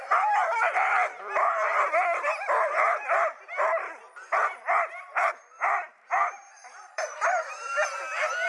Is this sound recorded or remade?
remade